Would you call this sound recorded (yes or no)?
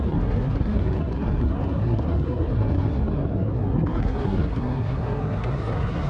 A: no